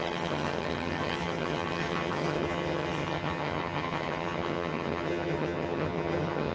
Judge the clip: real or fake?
fake